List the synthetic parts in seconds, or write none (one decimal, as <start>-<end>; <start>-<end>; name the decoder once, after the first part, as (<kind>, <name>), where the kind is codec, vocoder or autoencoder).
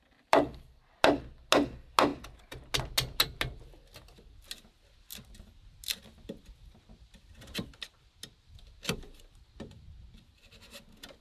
2.1-2.7 (vocoder, BigVGAN v2)